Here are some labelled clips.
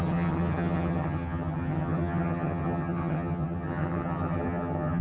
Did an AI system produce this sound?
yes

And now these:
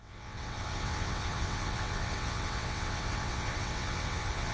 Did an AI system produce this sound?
yes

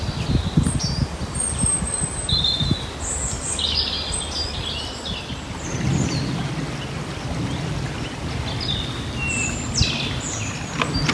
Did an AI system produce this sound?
no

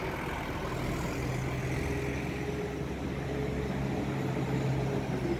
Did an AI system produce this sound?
no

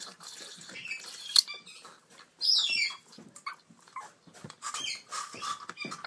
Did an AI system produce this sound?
no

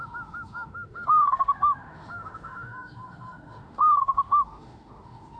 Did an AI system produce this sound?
yes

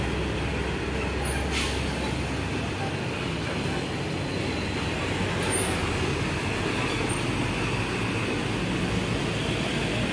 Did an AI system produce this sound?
no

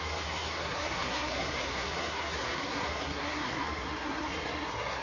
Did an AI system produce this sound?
yes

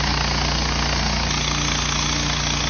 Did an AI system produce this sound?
no